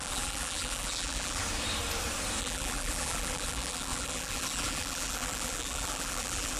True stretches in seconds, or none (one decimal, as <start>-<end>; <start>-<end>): 1.4-2.4